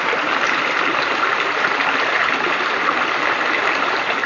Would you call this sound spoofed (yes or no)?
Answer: no